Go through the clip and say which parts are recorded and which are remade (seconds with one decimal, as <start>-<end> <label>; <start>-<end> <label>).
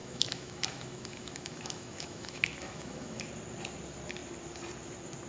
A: 0.0-3.2 remade; 3.2-5.3 recorded